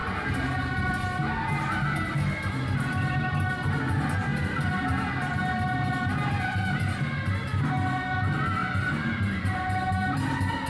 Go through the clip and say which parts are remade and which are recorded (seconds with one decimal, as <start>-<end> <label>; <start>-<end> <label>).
0.0-0.9 remade; 0.9-4.2 recorded; 4.2-6.8 remade; 6.8-8.6 recorded; 8.6-10.7 remade